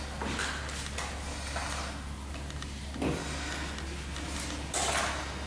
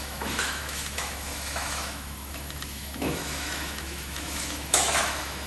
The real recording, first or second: first